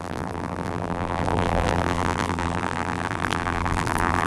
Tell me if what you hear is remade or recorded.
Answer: remade